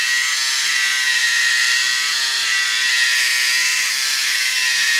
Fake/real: real